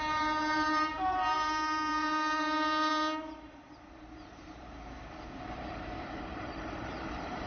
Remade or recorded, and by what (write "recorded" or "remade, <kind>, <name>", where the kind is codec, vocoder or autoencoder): remade, vocoder, BigVGAN v2